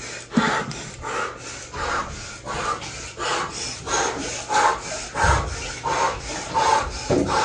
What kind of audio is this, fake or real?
real